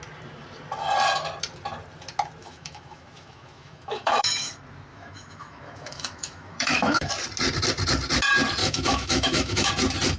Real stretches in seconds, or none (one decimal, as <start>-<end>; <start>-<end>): 0.0-2.4; 4.5-4.9; 7.1-8.6; 9.7-10.2